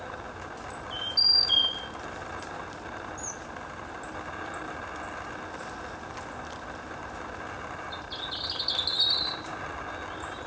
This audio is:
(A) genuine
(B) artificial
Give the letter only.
A